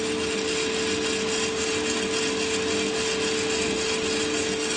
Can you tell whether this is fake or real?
real